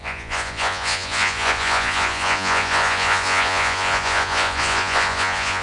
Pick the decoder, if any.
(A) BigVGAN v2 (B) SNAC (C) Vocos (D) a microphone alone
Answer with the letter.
C